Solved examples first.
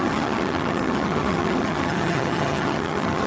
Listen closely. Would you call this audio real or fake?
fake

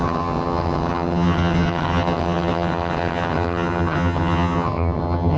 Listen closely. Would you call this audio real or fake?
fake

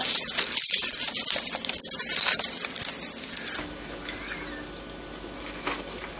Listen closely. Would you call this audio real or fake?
real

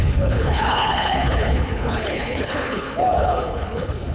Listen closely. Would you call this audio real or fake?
fake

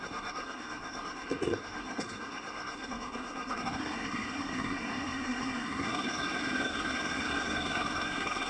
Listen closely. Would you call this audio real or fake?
fake